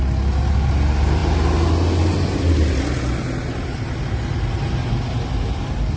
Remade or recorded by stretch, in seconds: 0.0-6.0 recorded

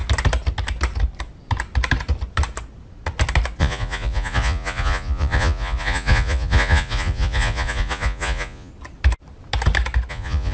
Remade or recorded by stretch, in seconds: 0.0-3.6 recorded; 3.6-8.7 remade; 8.7-10.1 recorded; 10.1-10.5 remade

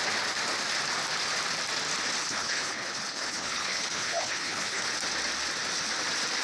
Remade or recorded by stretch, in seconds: 0.0-2.2 recorded; 2.2-4.8 remade; 4.8-6.4 recorded

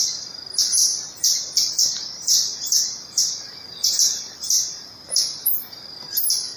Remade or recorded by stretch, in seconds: 0.0-0.9 recorded; 0.9-4.9 remade; 4.9-6.6 recorded

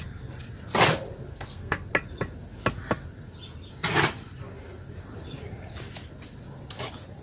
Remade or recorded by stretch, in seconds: 0.0-1.3 recorded; 1.3-1.9 remade; 1.9-7.2 recorded

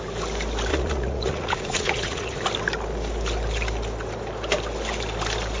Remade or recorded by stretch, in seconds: 0.0-0.7 recorded; 0.7-2.4 remade; 2.4-5.6 recorded